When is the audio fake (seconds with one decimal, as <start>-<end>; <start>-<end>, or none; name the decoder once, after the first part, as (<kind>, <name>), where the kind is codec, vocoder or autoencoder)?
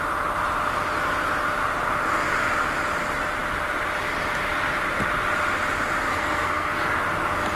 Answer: 6.1-6.9 (codec, SNAC)